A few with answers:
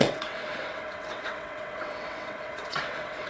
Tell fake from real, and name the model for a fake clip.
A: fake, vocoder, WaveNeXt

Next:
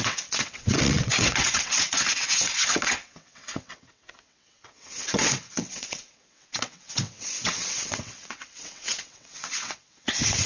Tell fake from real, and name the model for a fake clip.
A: fake, vocoder, WaveNeXt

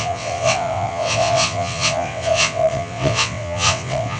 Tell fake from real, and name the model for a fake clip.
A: fake, vocoder, WaveNeXt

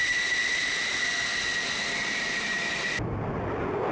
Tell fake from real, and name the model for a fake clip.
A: real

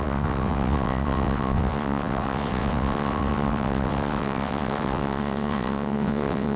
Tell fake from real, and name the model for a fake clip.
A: fake, vocoder, WaveNeXt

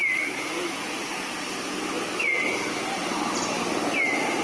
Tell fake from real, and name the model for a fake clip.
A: real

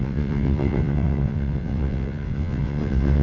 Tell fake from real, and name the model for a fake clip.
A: fake, vocoder, WaveNeXt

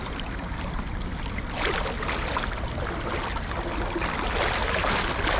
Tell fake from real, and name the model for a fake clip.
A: real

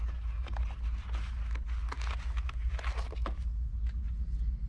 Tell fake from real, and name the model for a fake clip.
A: real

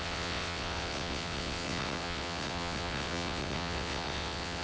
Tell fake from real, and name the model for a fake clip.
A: fake, vocoder, WaveNeXt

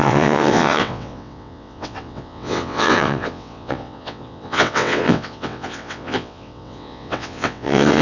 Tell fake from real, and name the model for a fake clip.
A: fake, vocoder, WaveNeXt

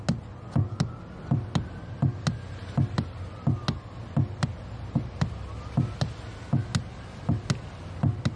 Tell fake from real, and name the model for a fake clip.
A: real